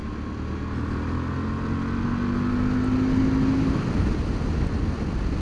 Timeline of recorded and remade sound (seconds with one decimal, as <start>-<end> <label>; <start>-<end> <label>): 0.0-5.4 recorded